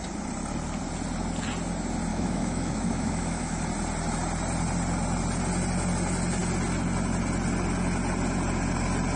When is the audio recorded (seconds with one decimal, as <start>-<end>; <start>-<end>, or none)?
0.0-2.1; 3.6-9.2